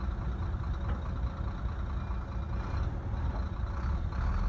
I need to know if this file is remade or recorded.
recorded